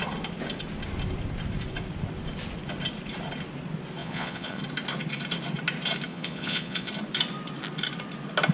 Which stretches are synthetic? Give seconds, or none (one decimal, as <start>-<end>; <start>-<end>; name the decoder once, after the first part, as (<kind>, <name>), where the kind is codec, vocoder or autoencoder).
4.0-4.6 (vocoder, Vocos); 6.1-6.9